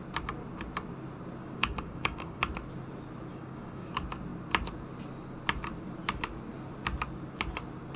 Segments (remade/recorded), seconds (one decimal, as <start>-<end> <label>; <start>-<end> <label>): 0.0-1.4 recorded; 1.4-2.4 remade; 2.4-3.3 recorded; 3.3-3.9 remade; 3.9-8.0 recorded